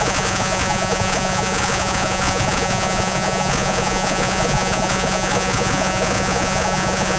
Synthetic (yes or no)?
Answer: yes